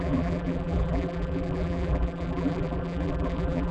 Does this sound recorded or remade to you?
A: remade